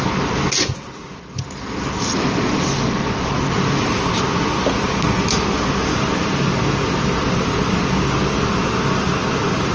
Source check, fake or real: real